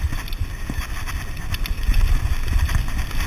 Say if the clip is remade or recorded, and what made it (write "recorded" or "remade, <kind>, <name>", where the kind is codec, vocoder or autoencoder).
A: recorded